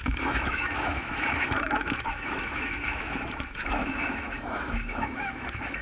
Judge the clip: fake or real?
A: fake